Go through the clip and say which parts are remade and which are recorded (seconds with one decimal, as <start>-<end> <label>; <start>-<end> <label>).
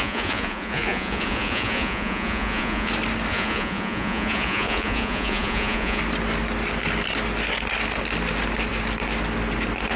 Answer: 0.0-2.9 remade; 2.9-3.3 recorded; 3.3-6.0 remade; 6.0-10.0 recorded